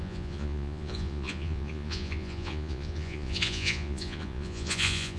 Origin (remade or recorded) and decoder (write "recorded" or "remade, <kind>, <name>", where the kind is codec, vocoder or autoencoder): remade, vocoder, Vocos